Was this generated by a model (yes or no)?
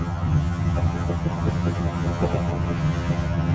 yes